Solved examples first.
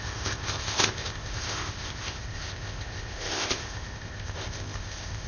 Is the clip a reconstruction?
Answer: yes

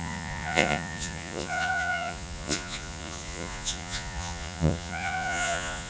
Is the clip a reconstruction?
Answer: yes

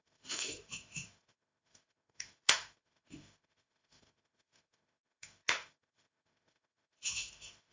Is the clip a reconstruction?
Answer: yes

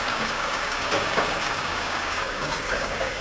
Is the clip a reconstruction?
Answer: yes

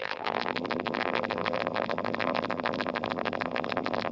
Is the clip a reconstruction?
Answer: yes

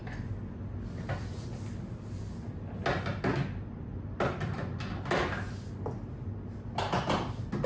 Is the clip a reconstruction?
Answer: no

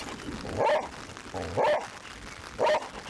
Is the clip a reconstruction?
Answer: no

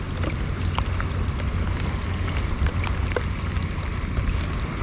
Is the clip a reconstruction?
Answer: no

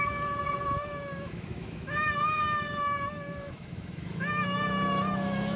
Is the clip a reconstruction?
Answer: yes